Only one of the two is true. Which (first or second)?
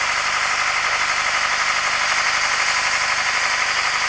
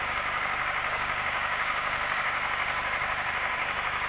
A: first